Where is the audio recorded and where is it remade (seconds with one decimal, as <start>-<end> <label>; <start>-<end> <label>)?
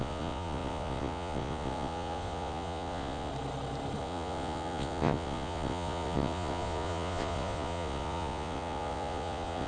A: 0.0-3.3 remade; 3.3-4.0 recorded; 4.0-9.7 remade